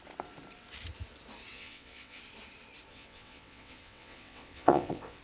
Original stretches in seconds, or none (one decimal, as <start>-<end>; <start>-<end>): 0.0-1.5; 2.2-2.9